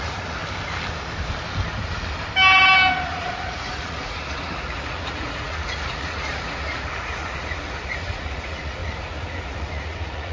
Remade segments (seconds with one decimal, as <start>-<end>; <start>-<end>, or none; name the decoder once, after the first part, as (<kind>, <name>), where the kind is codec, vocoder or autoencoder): 0.0-0.4 (vocoder, Vocos); 3.0-10.3